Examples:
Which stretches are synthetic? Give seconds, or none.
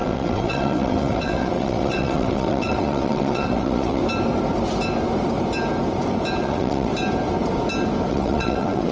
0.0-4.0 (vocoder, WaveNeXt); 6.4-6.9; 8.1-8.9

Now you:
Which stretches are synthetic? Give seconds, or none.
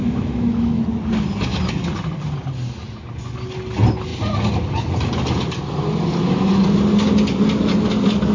0.0-0.8 (autoencoder, DAC-VAE)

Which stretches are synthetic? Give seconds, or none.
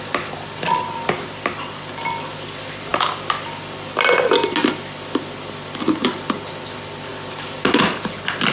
none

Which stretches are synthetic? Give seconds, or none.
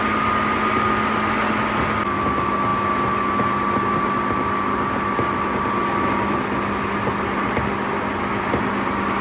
none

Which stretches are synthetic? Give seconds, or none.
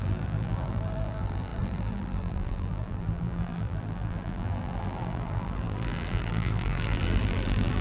0.0-7.8 (vocoder, BigVGAN v2)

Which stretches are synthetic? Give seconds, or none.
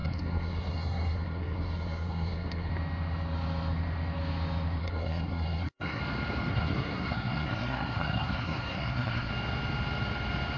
0.0-2.7 (codec, SNAC); 4.8-6.0; 6.5-9.3